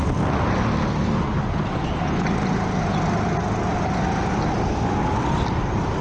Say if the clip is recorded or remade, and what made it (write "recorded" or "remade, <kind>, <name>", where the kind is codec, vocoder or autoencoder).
recorded